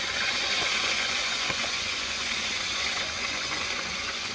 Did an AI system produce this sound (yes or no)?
yes